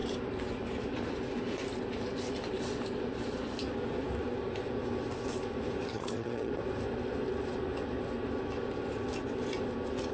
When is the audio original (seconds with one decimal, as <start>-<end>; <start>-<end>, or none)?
0.0-5.9; 6.5-10.1